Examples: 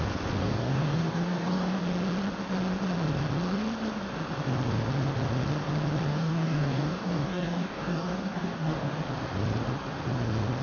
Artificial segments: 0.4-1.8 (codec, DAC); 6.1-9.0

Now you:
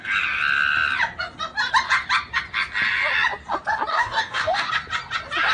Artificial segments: 3.9-4.7 (codec, DAC)

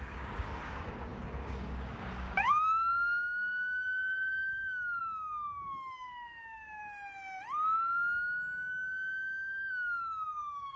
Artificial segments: 0.0-6.8 (codec, DAC); 9.7-10.8

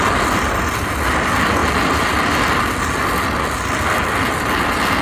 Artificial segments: none